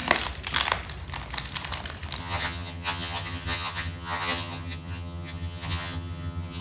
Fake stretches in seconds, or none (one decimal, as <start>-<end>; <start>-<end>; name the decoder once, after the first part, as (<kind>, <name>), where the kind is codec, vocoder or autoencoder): 2.2-6.6 (vocoder, HiFi-GAN)